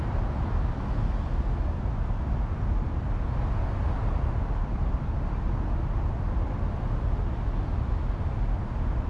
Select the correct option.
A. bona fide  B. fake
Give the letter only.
A